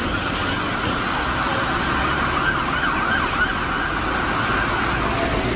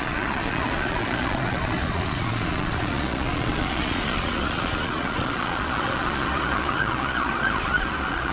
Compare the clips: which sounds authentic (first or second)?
first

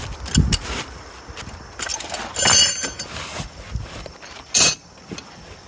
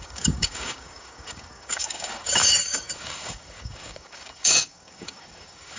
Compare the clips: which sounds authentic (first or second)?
first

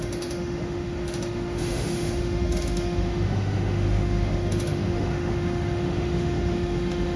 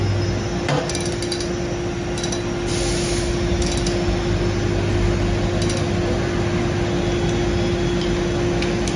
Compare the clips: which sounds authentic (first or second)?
second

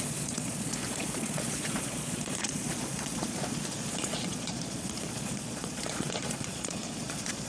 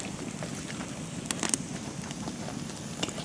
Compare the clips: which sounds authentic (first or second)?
second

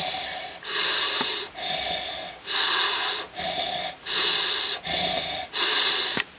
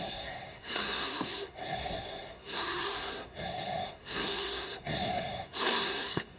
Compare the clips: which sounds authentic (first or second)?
first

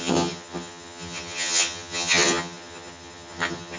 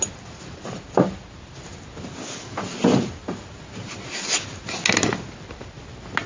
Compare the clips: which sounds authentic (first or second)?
second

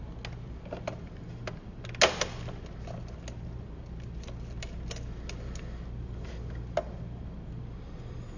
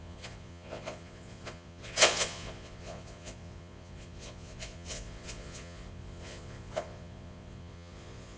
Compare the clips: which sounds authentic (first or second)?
first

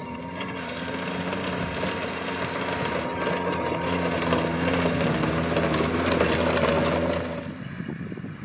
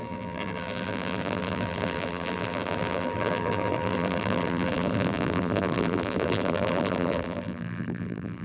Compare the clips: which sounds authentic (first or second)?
first